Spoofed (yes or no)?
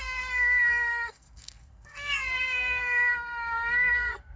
yes